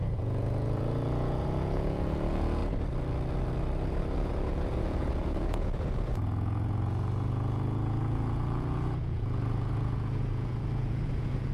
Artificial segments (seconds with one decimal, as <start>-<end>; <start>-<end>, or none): 0.0-2.6; 4.0-11.5